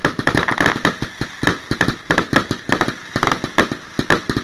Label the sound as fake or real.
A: real